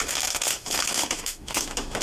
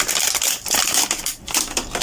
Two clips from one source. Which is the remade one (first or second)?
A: first